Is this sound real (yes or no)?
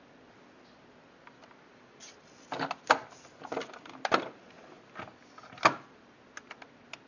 yes